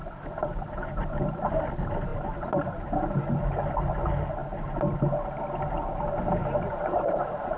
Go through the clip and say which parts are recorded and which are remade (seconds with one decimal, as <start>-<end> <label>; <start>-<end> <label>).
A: 0.0-1.3 remade; 1.3-2.1 recorded; 2.1-3.2 remade; 3.2-6.4 recorded; 6.4-7.6 remade